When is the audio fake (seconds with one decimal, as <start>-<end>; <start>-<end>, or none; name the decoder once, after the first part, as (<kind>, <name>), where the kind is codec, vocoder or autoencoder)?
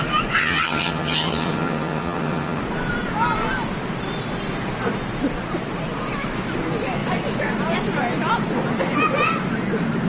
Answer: 0.4-2.6 (vocoder, HiFi-GAN)